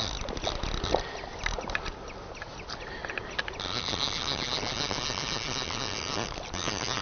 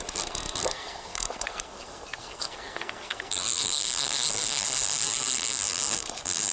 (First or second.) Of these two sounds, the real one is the first